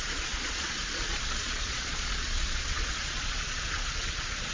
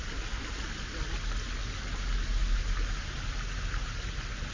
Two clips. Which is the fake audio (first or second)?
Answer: first